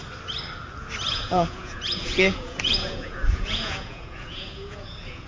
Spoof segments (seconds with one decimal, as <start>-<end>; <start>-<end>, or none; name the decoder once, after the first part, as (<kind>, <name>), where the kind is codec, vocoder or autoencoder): 1.1-5.3 (vocoder, Vocos)